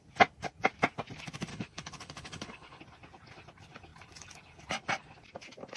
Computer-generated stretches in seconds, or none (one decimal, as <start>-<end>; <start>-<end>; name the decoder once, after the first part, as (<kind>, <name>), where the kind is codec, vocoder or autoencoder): 1.5-2.8 (codec, HILCodec)